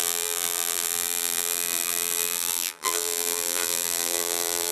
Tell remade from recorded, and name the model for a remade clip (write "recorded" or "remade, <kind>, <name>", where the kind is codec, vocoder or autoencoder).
remade, vocoder, BigVGAN v2